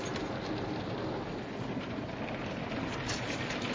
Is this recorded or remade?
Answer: recorded